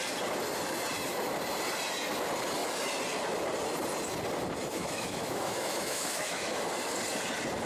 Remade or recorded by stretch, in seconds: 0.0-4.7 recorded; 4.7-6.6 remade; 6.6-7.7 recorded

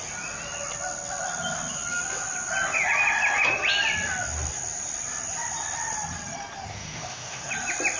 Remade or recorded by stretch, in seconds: 0.0-6.7 recorded; 6.7-7.5 remade; 7.5-8.0 recorded